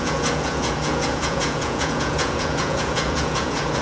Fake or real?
fake